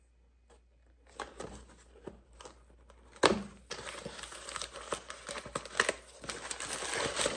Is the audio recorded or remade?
recorded